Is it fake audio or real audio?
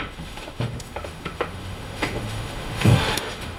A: fake